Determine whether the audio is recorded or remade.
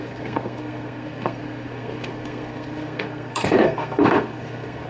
remade